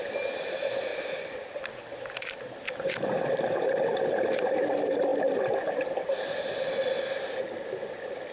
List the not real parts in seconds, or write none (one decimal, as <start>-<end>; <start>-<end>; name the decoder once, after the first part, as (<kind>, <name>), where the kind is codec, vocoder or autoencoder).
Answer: none

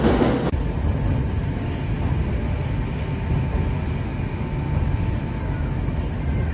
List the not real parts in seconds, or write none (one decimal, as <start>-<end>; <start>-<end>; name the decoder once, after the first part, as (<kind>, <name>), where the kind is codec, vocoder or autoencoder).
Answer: none

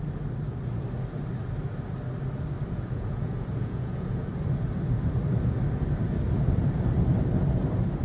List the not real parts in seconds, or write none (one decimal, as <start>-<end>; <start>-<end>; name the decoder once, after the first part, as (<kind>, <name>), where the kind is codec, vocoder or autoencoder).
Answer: 2.6-4.3 (vocoder, Vocos)

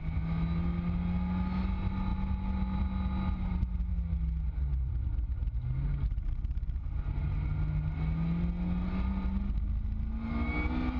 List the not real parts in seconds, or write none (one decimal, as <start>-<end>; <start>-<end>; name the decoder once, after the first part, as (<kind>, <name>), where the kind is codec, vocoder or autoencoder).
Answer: none